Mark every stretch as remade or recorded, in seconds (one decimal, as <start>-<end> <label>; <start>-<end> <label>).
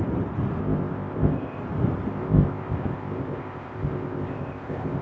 0.0-0.6 recorded; 0.6-1.6 remade; 1.6-2.1 recorded; 2.1-5.0 remade